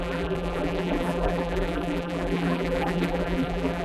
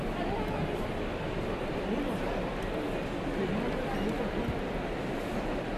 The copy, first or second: first